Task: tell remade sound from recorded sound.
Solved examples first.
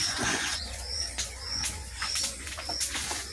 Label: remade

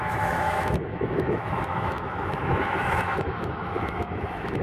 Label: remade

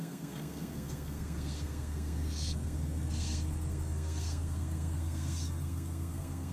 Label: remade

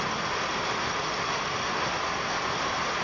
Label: recorded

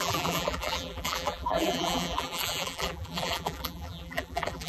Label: remade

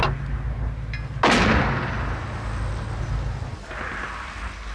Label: recorded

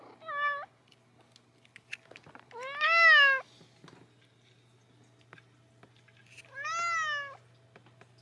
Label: recorded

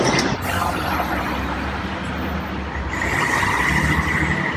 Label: recorded